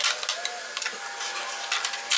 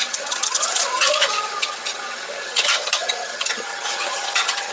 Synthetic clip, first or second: second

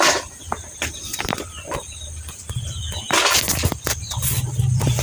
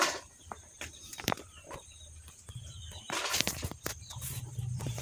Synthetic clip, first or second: second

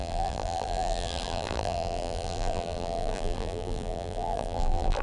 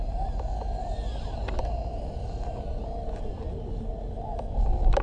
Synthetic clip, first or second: first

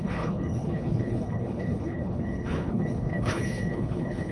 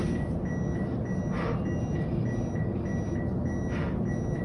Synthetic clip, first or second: first